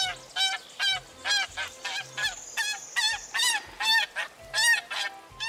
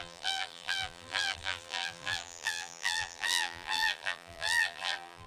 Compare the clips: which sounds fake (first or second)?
second